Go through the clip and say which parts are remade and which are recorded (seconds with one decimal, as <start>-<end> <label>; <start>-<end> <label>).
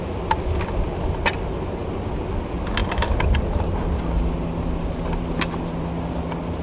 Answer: 0.0-6.6 recorded